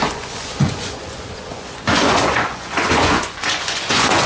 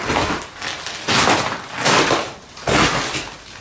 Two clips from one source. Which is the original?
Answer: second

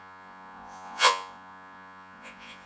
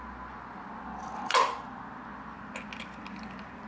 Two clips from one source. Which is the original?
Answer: second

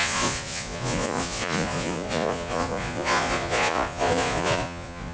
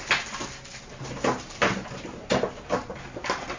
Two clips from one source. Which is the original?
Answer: second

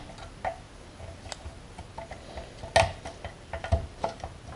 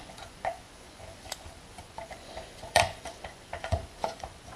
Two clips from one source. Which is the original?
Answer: first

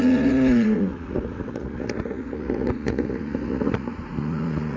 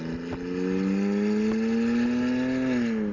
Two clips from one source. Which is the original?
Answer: second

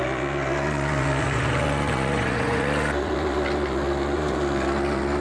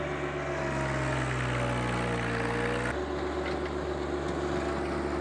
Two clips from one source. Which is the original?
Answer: second